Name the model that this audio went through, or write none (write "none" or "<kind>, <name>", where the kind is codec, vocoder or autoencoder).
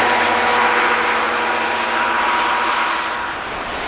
none